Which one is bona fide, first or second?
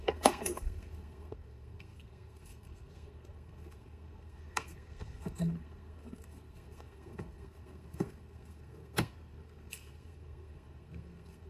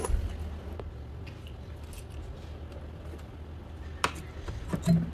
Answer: second